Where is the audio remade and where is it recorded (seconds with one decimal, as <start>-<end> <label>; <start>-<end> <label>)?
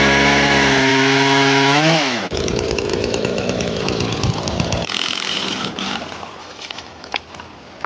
0.0-0.9 recorded; 0.9-2.2 remade; 2.2-2.9 recorded; 2.9-3.8 remade; 3.8-6.4 recorded; 6.4-7.1 remade; 7.1-7.9 recorded